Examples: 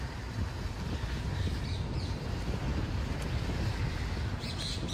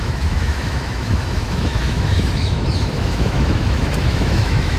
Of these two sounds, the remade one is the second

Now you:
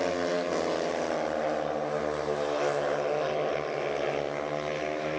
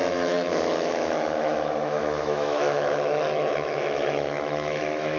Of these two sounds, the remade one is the second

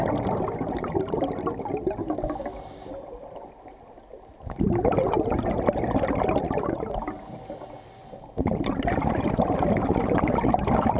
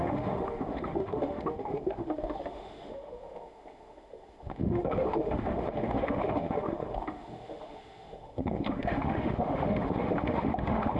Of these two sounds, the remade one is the second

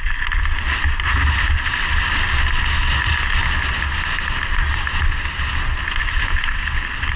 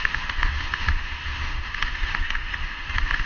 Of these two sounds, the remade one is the second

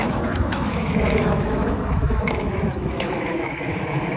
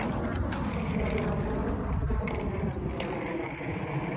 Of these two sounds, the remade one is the first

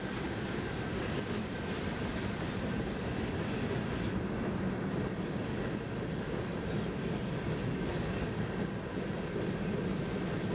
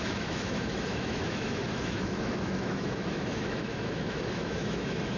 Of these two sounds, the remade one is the second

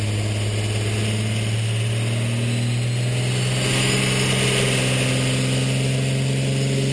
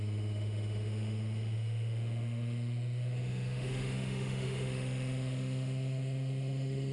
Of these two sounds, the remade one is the second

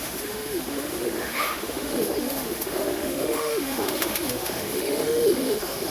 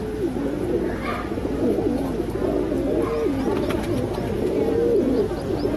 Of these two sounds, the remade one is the first